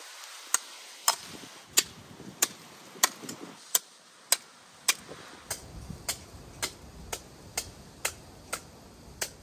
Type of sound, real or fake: real